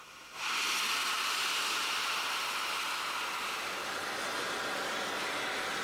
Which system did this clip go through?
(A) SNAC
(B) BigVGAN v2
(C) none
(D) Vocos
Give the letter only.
C